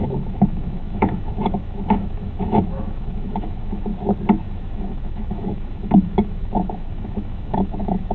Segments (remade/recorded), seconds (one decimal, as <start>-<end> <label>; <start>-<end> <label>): 0.0-3.9 remade; 3.9-4.4 recorded; 4.4-8.1 remade